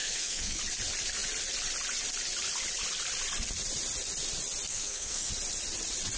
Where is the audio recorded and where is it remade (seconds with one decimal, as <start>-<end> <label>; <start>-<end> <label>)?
0.0-0.6 remade; 0.6-4.7 recorded; 4.7-5.3 remade; 5.3-6.2 recorded